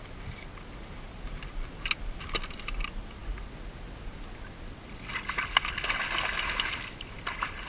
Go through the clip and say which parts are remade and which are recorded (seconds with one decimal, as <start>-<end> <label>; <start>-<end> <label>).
0.0-7.7 recorded